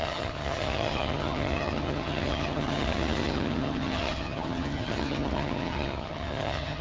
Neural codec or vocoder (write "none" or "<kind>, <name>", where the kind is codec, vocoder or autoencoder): vocoder, HiFi-GAN